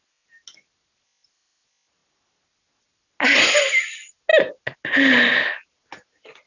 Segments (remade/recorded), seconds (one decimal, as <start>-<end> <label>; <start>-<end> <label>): 0.0-6.5 recorded